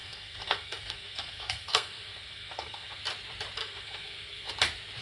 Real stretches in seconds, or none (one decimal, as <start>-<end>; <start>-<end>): 3.0-3.6; 4.5-5.0